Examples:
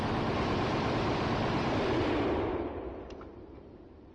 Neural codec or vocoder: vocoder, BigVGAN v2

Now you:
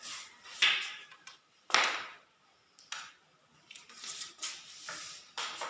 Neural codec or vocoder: none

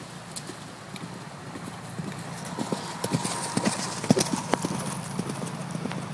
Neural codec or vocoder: none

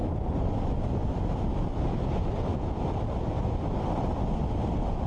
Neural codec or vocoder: none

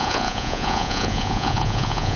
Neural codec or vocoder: vocoder, Vocos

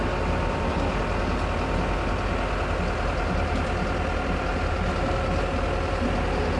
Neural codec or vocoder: none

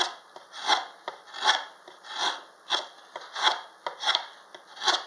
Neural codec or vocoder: none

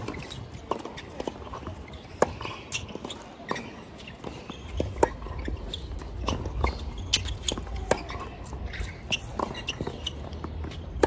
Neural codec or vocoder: none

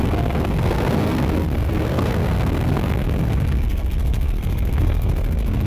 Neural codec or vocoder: codec, SNAC